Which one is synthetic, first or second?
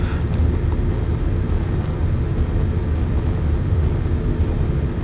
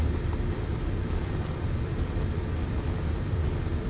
second